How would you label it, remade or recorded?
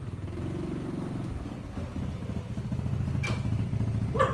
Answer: recorded